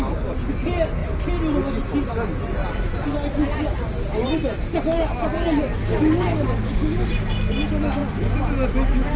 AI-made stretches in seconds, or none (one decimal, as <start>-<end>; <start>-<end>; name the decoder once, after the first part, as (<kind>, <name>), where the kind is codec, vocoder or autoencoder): none